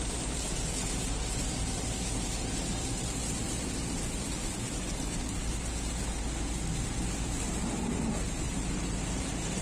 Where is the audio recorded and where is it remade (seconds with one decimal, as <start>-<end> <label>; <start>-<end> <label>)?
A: 0.0-3.8 remade; 3.8-7.5 recorded; 7.5-9.6 remade